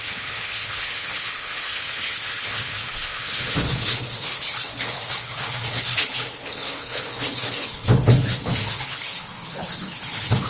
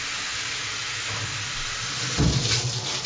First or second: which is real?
second